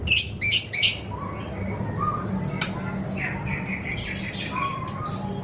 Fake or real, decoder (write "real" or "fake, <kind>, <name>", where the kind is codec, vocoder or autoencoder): real